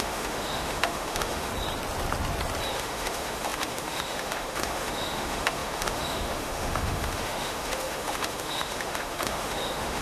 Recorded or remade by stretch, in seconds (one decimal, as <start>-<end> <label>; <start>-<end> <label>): 0.0-1.5 remade; 1.5-2.7 recorded; 2.7-10.0 remade